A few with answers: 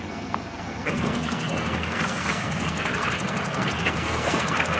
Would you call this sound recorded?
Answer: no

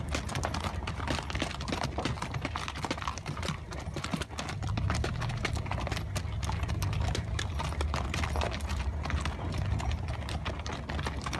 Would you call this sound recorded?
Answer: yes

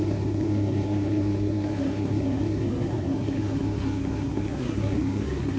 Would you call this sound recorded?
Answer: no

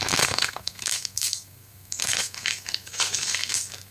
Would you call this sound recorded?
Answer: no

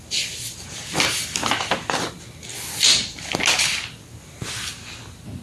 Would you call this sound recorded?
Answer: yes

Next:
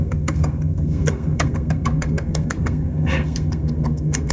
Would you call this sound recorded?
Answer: no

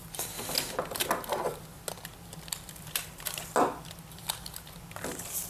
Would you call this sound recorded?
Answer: yes